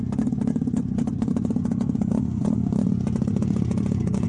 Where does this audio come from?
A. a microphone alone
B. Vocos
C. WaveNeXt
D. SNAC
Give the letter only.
B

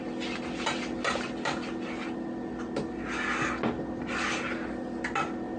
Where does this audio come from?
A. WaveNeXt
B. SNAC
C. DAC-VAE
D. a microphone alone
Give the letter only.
D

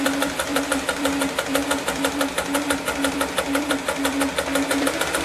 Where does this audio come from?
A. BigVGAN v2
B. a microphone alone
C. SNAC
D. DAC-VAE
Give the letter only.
A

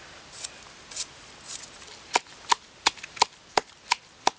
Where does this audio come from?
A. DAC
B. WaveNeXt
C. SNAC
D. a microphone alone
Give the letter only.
D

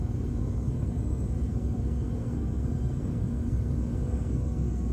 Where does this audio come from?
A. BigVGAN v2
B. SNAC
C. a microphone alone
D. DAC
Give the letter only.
B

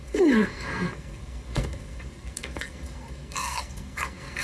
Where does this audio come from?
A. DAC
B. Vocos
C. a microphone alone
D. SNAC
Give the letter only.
D